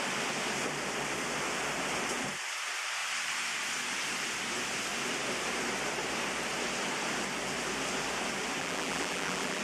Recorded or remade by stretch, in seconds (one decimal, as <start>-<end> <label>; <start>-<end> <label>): 0.0-8.6 recorded; 8.6-9.6 remade

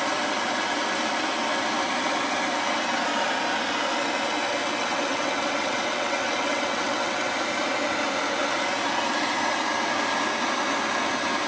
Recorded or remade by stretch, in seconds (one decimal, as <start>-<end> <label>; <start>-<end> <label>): 0.0-4.6 recorded; 4.6-7.3 remade; 7.3-11.5 recorded